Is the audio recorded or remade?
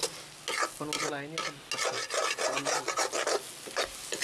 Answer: recorded